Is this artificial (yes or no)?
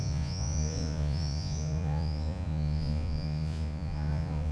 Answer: yes